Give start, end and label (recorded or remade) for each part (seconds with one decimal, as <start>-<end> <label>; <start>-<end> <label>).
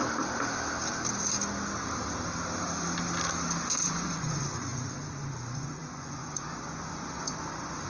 0.0-3.6 recorded; 3.6-7.9 remade